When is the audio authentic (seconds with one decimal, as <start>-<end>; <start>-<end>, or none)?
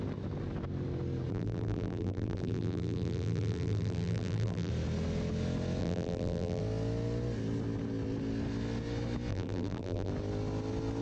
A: 0.0-1.3; 4.7-5.8; 6.6-9.3; 10.1-11.0